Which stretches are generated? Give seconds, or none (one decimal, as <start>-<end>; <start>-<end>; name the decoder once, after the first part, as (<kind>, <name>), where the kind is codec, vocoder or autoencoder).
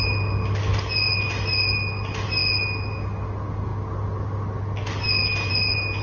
none